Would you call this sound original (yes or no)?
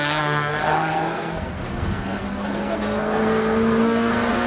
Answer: no